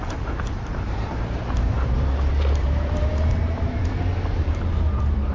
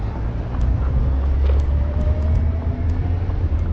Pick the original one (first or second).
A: second